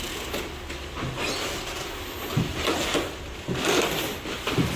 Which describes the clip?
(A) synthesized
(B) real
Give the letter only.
B